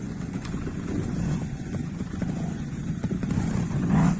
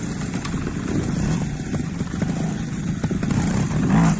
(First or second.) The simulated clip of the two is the first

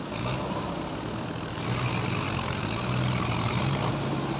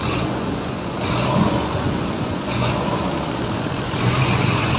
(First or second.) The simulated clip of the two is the second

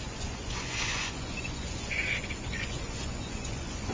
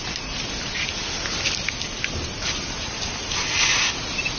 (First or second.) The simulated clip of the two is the first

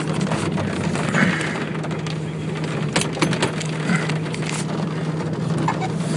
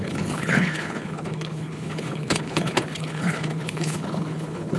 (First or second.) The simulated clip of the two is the second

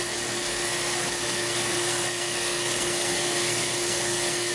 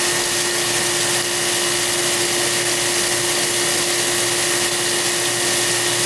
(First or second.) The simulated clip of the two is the first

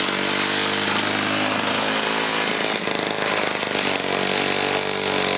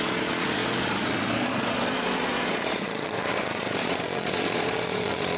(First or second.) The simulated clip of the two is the second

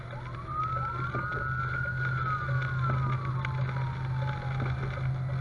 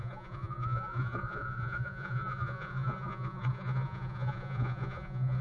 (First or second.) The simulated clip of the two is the second